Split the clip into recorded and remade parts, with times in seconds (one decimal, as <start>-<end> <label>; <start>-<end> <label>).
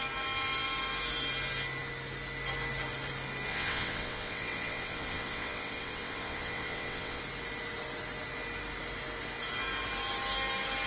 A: 0.0-3.5 recorded; 3.5-7.2 remade; 7.2-10.9 recorded